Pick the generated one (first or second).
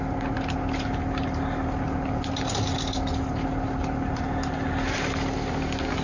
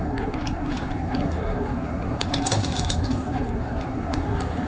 second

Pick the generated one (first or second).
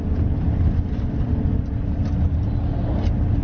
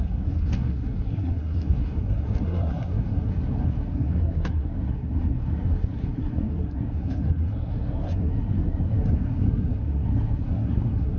second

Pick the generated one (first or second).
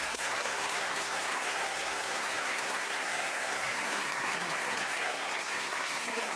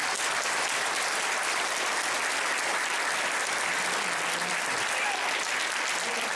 first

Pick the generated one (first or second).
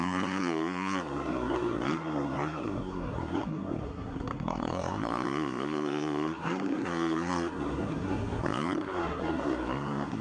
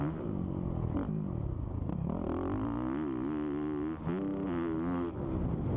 first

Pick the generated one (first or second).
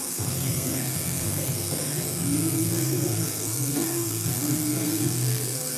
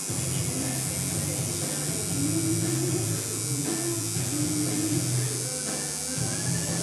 first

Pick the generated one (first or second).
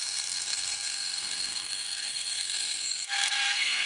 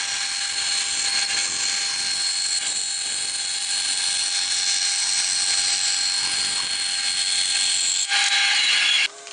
first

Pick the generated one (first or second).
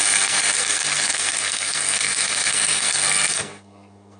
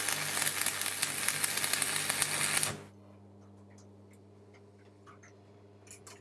first